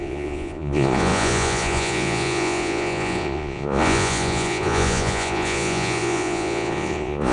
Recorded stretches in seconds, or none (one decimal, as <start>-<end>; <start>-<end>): none